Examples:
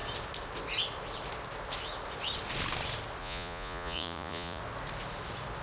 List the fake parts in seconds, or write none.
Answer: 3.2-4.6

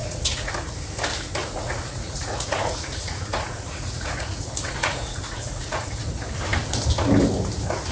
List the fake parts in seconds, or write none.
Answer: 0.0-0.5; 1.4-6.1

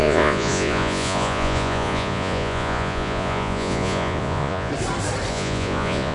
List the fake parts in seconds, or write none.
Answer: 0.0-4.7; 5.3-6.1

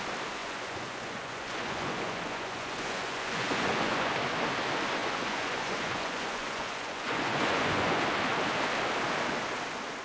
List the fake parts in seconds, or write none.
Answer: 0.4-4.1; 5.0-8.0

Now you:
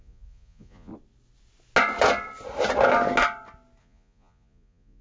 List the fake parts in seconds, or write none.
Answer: 0.0-0.9; 3.8-5.0